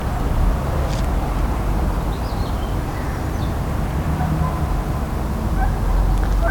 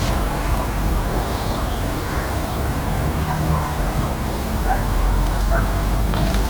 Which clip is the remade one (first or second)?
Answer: second